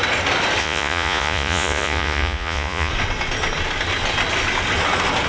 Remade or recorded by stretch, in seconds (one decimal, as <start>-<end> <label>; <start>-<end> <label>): 0.0-0.6 recorded; 0.6-2.9 remade; 2.9-5.3 recorded